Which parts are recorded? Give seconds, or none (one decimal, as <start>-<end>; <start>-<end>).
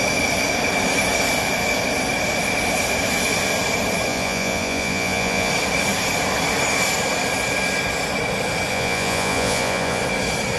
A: 0.0-4.1; 5.5-8.7; 10.0-10.6